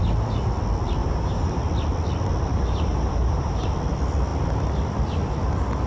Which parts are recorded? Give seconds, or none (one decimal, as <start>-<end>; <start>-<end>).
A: 0.0-1.0; 1.6-2.5; 3.7-5.9